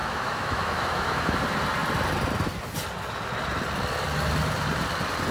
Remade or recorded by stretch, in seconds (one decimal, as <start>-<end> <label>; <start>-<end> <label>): 0.0-1.4 remade; 1.4-5.3 recorded